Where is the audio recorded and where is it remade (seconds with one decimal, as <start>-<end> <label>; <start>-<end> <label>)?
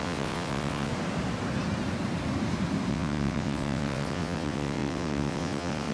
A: 0.0-0.9 remade; 0.9-2.9 recorded; 2.9-5.9 remade